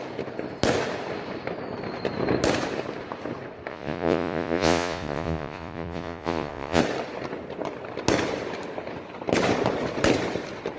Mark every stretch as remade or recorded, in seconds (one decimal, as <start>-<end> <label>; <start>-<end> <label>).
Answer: 0.0-3.7 recorded; 3.7-6.8 remade; 6.8-10.8 recorded